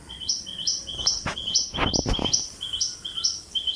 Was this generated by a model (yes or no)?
no